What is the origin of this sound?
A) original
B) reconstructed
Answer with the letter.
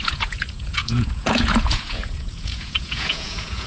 B